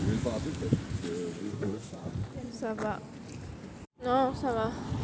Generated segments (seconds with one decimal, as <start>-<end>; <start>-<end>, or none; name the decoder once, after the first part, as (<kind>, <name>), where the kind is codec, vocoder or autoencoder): 1.4-2.1 (codec, SNAC)